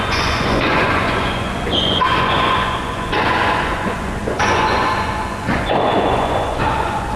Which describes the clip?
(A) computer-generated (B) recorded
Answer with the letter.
A